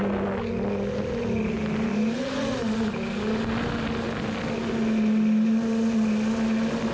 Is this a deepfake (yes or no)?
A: no